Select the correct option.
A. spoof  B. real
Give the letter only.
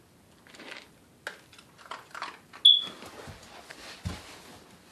B